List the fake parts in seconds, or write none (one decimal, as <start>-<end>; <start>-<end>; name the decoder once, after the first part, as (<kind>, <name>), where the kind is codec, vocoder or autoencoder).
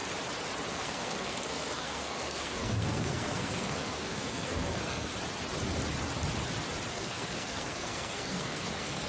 0.7-5.1 (codec, SNAC); 6.9-9.1